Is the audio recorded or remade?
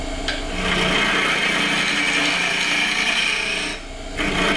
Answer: recorded